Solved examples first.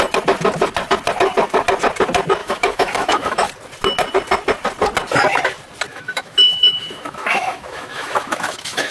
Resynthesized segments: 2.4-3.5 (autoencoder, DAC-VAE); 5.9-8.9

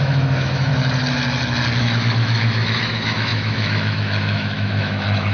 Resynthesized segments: 0.0-0.7 (autoencoder, DAC-VAE); 1.8-5.3

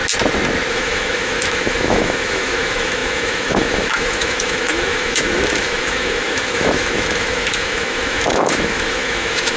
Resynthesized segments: 0.7-9.6 (autoencoder, DAC-VAE)

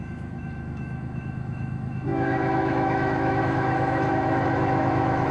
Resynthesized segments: 0.0-5.3 (autoencoder, DAC-VAE)

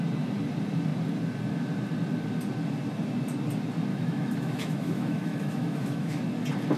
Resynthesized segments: 3.9-6.2 (autoencoder, DAC-VAE)

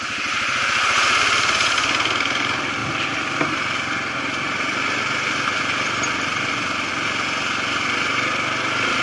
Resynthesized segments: none